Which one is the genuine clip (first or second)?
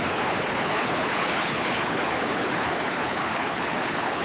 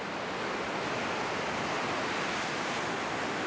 second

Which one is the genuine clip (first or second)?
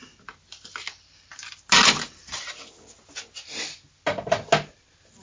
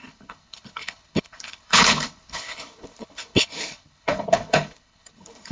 first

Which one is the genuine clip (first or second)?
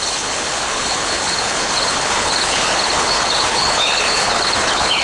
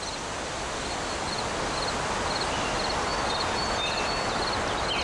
second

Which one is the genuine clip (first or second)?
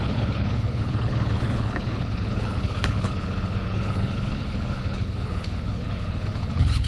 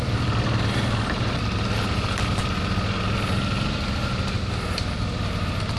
second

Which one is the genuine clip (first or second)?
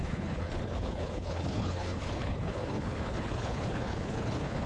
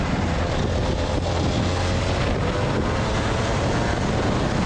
second